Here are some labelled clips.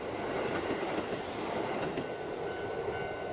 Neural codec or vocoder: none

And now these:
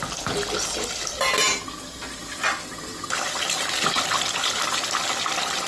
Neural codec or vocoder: none